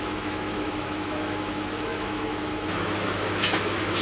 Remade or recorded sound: remade